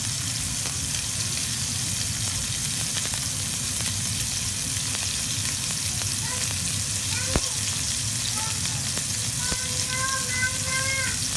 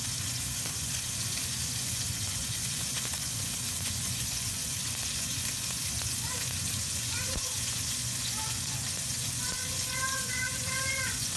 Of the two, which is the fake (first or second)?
second